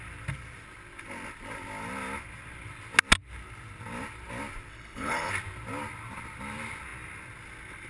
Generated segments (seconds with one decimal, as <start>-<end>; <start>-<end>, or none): 4.7-5.3